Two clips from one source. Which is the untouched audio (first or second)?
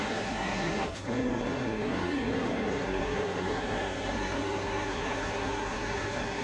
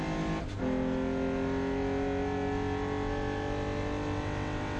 second